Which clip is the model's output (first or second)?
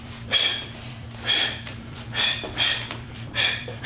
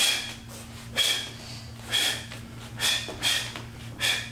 first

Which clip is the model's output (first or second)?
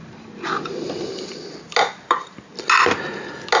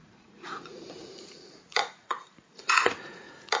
second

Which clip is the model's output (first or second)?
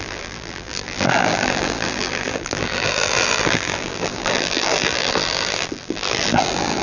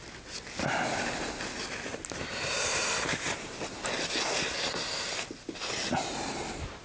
first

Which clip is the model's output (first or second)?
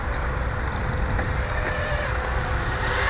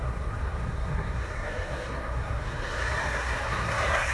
second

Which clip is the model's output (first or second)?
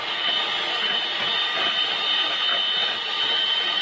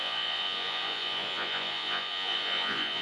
second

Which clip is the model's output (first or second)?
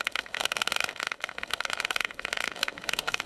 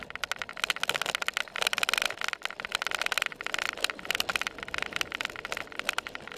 first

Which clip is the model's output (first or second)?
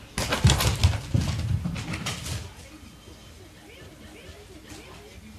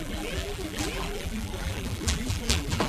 second